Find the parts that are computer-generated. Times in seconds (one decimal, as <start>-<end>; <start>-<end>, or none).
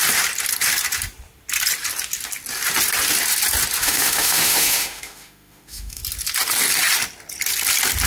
3.8-6.0